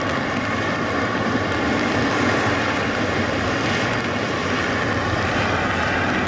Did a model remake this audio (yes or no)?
no